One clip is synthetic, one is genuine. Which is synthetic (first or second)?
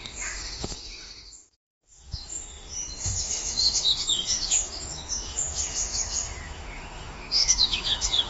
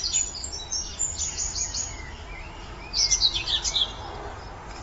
first